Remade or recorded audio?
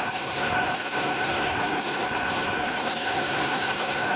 remade